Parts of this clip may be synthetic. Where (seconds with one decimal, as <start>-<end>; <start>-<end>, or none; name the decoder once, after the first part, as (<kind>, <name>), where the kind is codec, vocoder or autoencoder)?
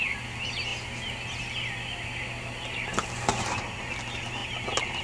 none